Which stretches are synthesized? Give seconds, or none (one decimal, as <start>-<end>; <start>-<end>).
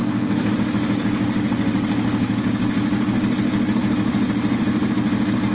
0.0-0.5